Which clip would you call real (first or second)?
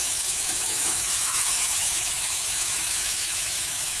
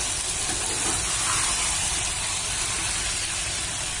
second